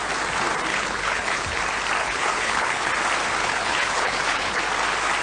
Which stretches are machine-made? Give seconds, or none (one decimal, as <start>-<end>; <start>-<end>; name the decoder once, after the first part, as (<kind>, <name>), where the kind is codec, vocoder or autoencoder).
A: 0.7-1.6 (codec, HILCodec); 2.0-2.9; 3.4-4.6